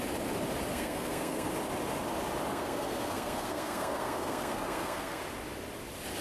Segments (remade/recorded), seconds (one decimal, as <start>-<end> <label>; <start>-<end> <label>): 0.0-0.7 recorded; 0.7-1.5 remade; 1.5-2.5 recorded; 2.5-5.2 remade; 5.2-6.2 recorded